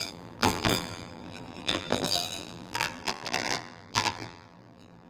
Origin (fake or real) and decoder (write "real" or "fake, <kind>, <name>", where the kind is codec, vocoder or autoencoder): fake, vocoder, BigVGAN v2